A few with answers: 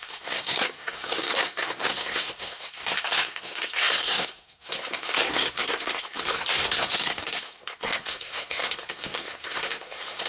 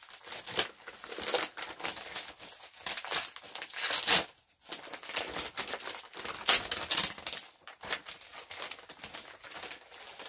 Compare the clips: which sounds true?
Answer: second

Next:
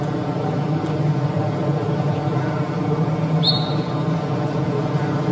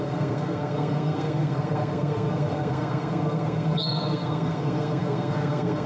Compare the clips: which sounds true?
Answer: first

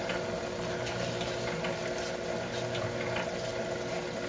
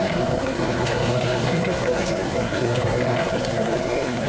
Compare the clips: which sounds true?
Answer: first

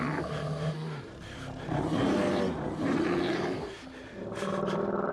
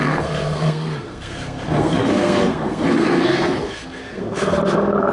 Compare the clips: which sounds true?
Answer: first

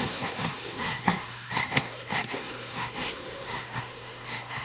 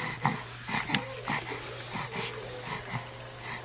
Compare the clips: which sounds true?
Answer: second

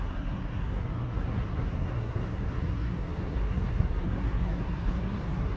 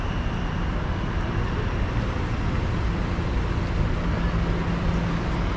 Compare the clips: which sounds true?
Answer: second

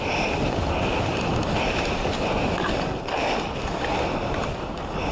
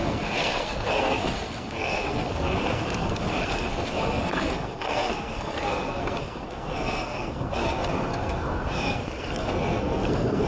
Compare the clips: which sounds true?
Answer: first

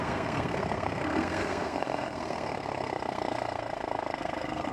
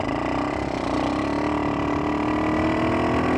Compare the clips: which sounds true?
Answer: second